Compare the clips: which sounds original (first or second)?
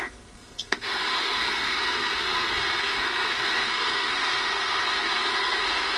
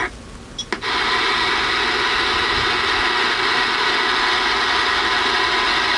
second